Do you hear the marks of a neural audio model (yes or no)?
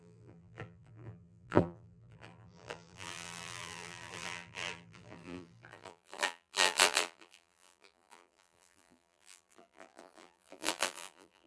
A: yes